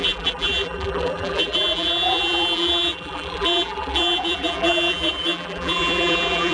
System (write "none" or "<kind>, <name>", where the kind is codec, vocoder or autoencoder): vocoder, BigVGAN v2